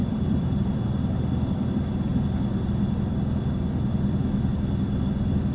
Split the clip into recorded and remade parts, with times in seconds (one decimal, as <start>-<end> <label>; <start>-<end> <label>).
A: 0.0-1.3 remade; 1.3-5.5 recorded